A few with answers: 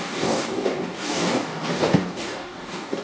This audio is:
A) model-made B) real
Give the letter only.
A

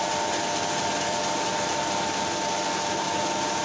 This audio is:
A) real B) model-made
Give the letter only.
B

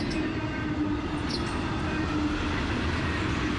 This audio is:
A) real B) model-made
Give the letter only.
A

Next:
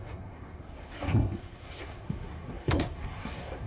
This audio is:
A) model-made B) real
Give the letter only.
A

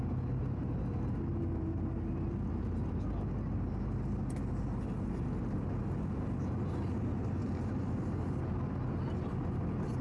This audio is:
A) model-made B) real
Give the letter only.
B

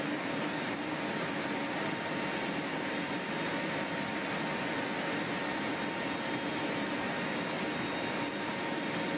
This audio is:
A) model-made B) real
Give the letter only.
B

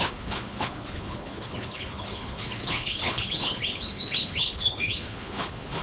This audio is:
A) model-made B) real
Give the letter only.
A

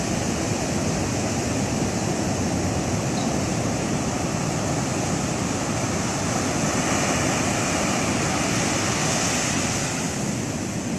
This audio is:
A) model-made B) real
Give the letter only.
B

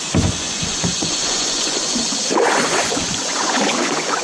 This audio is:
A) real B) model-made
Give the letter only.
B